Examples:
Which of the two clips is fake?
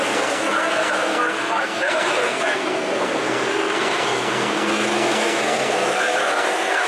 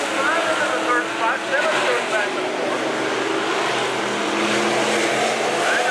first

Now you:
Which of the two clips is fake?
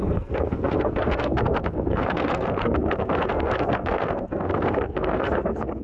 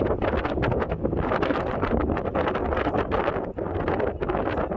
first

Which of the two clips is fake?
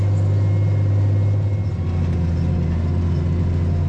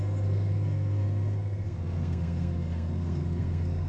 second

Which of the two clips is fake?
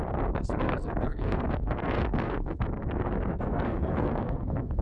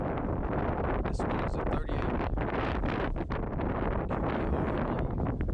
first